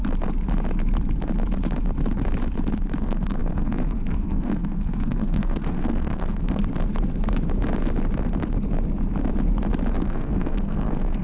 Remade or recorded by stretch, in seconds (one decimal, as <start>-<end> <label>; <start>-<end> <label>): 0.0-3.0 recorded; 3.0-6.6 remade; 6.6-9.9 recorded; 9.9-11.2 remade